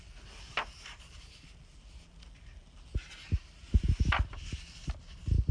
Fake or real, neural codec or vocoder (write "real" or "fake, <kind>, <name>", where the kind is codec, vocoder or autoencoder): real